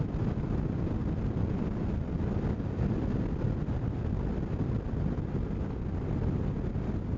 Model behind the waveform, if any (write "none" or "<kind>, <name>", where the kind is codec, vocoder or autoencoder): none